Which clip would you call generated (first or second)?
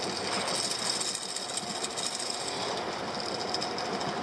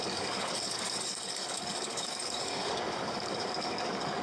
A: second